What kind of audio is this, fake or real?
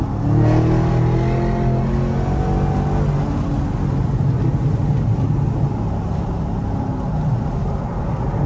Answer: real